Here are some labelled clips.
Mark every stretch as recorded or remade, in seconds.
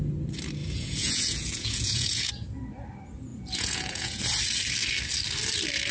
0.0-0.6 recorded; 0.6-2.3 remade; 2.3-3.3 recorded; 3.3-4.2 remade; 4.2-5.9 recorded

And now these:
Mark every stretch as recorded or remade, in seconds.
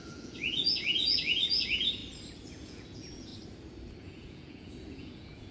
0.0-2.0 remade; 2.0-2.5 recorded; 2.5-3.3 remade; 3.3-4.0 recorded; 4.0-5.5 remade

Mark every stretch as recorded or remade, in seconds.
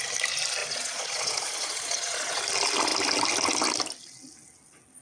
0.0-0.6 recorded; 0.6-2.4 remade; 2.4-5.0 recorded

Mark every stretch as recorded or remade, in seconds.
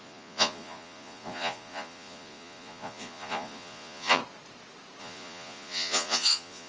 0.0-4.2 remade; 4.2-5.0 recorded; 5.0-6.7 remade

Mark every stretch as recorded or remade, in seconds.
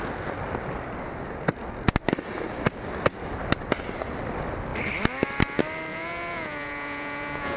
0.0-5.9 recorded; 5.9-7.6 remade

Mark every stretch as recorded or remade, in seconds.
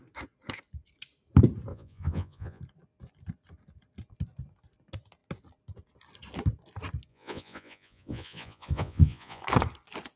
0.0-1.7 recorded; 1.7-2.6 remade; 2.6-7.1 recorded; 7.1-9.4 remade; 9.4-10.2 recorded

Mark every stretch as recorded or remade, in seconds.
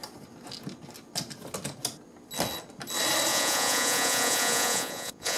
0.0-3.3 recorded; 3.3-5.4 remade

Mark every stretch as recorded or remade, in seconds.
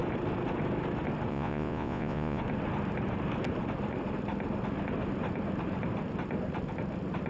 0.0-1.3 recorded; 1.3-2.4 remade; 2.4-7.3 recorded